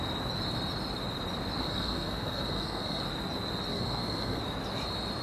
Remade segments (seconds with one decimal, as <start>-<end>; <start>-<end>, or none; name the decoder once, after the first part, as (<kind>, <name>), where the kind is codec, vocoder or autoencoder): 1.6-3.0 (codec, SNAC); 3.7-4.4